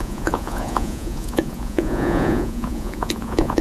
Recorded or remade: remade